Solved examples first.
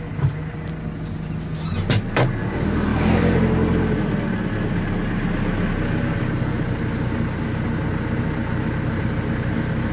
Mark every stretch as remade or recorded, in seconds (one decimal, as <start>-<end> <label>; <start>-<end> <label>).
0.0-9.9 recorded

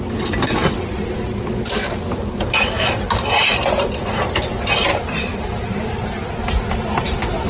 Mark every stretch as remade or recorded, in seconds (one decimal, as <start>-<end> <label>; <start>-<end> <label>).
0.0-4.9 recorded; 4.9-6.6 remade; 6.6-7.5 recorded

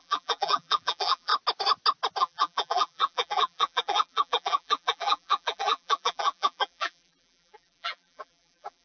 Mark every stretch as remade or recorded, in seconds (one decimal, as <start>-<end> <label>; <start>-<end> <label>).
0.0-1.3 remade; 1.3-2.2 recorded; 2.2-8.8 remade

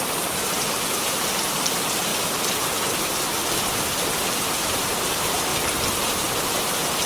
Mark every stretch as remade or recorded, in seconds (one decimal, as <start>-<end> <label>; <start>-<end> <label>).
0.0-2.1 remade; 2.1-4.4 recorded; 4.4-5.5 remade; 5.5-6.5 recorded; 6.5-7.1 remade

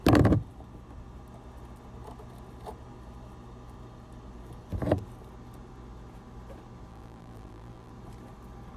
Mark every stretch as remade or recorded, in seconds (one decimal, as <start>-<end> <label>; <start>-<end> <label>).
0.0-6.9 recorded; 6.9-7.9 remade; 7.9-8.8 recorded